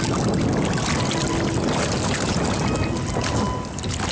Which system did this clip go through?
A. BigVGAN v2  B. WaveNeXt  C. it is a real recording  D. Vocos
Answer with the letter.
C